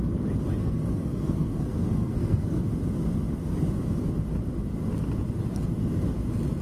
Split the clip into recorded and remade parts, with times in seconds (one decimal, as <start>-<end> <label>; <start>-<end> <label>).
0.0-0.6 recorded; 0.6-2.6 remade; 2.6-6.6 recorded